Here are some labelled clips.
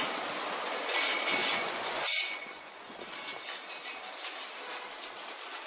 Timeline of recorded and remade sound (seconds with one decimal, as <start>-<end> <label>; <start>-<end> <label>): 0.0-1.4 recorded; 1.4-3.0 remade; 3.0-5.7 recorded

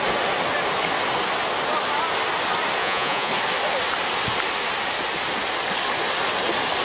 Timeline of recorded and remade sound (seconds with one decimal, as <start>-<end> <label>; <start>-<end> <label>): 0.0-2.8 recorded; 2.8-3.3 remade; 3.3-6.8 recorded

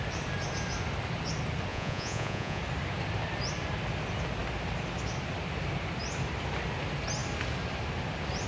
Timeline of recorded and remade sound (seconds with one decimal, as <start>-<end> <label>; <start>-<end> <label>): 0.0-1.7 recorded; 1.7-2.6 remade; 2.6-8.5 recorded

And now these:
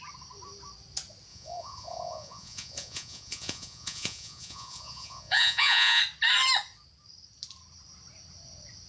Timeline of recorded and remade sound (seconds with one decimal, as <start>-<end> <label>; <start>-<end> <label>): 0.0-1.3 recorded; 1.3-6.0 remade; 6.0-8.9 recorded